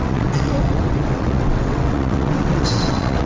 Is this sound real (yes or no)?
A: no